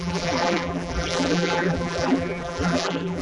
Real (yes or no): no